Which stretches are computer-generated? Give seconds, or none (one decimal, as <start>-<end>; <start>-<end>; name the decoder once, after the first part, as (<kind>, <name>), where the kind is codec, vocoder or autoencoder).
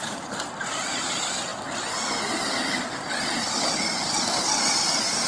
none